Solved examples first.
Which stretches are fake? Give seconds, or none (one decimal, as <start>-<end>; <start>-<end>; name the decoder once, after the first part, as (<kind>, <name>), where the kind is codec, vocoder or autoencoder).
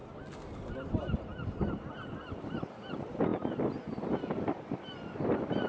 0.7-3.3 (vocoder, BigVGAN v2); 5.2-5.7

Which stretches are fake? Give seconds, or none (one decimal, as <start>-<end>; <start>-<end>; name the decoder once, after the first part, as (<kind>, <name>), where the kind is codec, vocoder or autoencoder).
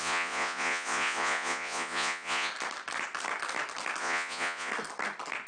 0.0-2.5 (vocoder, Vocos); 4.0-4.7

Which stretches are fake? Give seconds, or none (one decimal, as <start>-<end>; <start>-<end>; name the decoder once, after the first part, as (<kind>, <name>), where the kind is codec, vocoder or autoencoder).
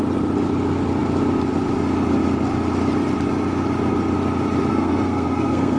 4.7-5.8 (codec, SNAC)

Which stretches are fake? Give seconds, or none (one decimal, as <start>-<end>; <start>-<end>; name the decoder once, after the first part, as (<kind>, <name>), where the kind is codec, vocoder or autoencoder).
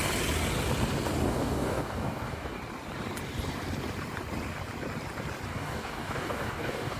1.3-2.6 (codec, DAC); 5.5-7.0